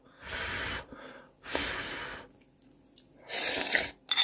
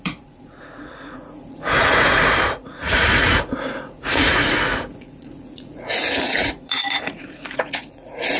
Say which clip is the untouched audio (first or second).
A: first